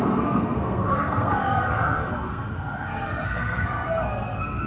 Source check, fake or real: fake